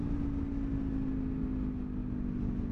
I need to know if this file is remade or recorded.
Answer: recorded